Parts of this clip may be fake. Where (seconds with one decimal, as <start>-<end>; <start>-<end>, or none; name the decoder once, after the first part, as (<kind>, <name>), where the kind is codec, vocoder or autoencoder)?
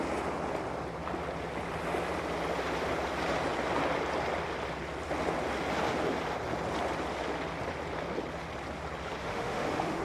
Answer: 9.2-10.0 (autoencoder, DAC-VAE)